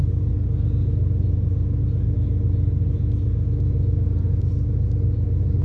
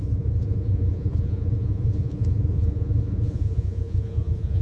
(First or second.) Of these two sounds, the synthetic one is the second